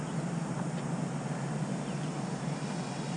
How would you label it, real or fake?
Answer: real